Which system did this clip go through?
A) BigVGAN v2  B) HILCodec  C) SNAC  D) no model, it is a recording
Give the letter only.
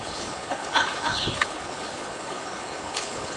B